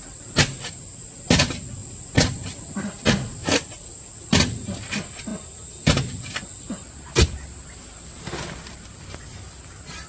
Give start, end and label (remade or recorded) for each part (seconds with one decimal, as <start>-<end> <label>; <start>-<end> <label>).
0.0-1.8 recorded; 1.8-2.8 remade; 2.8-3.4 recorded; 3.4-4.0 remade; 4.0-10.1 recorded